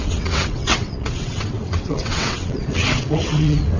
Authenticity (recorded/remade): remade